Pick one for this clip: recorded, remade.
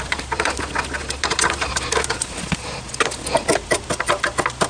recorded